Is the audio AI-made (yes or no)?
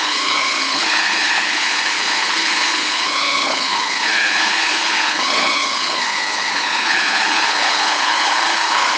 yes